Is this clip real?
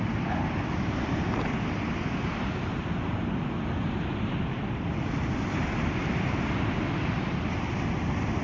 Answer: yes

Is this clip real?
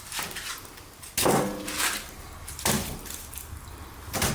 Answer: yes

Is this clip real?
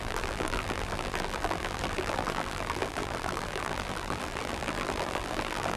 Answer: no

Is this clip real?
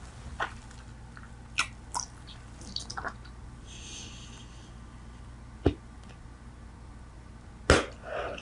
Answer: yes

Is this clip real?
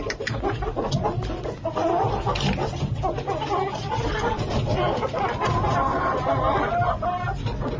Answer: yes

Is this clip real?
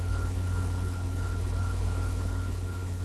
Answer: no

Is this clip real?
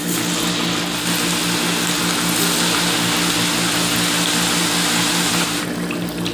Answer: yes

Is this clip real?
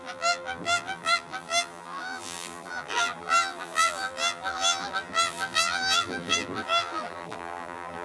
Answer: no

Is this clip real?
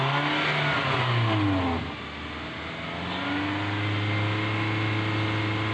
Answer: yes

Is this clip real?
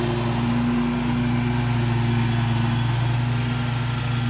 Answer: yes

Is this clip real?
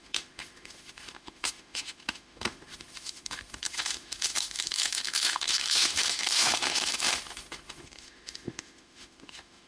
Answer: no